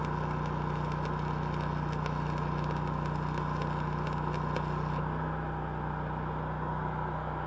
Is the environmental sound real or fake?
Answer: real